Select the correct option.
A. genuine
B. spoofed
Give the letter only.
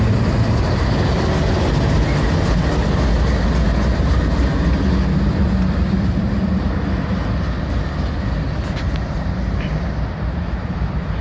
A